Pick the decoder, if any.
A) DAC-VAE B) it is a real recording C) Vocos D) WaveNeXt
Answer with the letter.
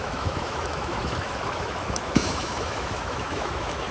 A